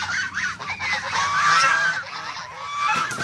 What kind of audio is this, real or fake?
real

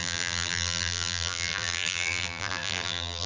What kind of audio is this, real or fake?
fake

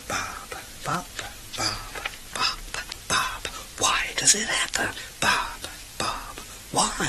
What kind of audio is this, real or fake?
real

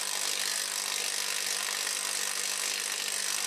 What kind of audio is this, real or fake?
real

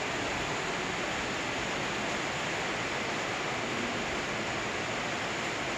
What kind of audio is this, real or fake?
real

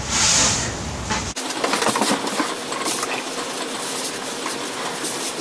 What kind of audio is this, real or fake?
real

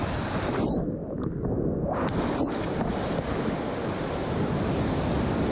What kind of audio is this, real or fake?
real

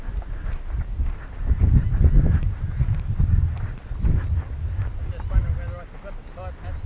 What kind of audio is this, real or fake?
real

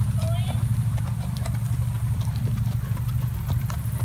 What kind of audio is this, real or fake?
fake